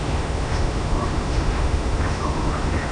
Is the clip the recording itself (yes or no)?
no